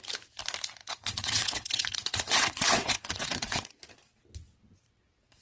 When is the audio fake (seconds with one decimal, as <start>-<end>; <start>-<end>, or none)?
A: 0.8-3.7